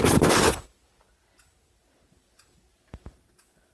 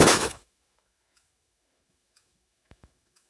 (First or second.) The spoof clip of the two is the second